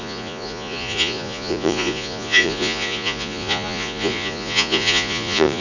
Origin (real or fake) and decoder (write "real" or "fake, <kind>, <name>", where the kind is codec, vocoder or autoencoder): fake, vocoder, Vocos